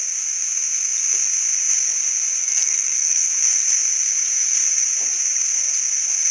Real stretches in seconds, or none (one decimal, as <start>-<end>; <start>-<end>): 0.0-2.4; 3.3-6.3